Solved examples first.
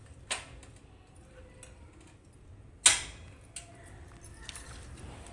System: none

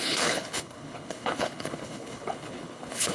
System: codec, HILCodec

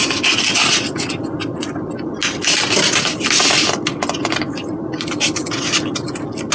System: none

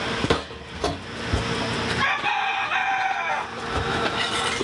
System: none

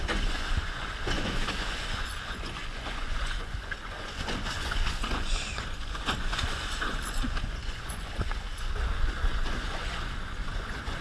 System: vocoder, Vocos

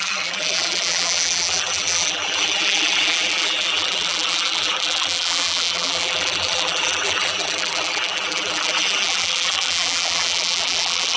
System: vocoder, BigVGAN v2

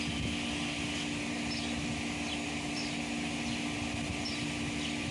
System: none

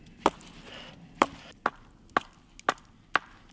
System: none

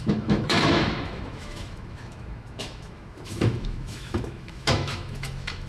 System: autoencoder, DAC-VAE